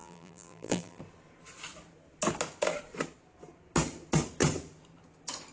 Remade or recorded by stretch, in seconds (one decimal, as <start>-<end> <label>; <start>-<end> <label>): 0.0-1.0 remade; 1.0-5.5 recorded

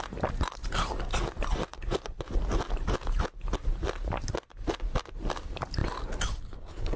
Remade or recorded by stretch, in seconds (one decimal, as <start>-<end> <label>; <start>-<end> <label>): 0.0-7.0 recorded

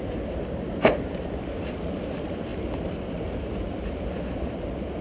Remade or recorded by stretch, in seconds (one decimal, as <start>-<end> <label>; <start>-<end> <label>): 0.0-5.0 recorded

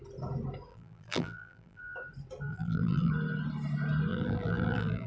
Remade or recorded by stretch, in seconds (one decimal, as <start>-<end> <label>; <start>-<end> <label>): 0.0-0.7 recorded; 0.7-1.8 remade; 1.8-2.5 recorded; 2.5-3.1 remade; 3.1-4.1 recorded; 4.1-5.1 remade

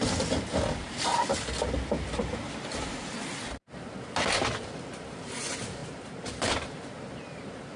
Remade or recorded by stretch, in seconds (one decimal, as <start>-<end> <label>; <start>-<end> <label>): 0.0-1.2 remade; 1.2-7.8 recorded